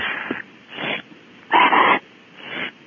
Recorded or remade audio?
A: recorded